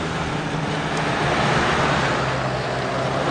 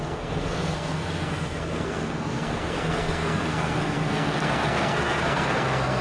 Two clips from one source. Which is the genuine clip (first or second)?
first